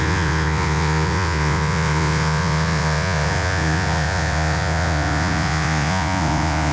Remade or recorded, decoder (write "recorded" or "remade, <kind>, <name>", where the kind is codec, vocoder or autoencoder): remade, vocoder, Vocos